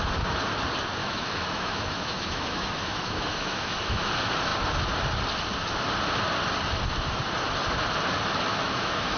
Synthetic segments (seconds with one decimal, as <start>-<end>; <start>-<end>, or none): 1.0-4.1; 8.5-9.2